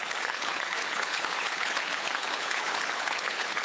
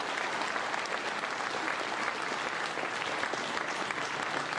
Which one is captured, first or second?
second